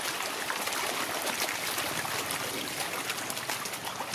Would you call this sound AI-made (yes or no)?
no